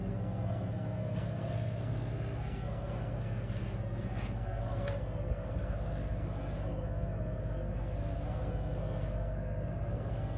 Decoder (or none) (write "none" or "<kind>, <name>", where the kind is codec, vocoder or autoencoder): codec, SNAC